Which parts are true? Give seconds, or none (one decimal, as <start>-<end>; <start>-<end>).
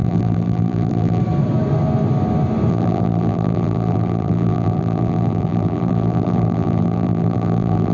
1.2-2.7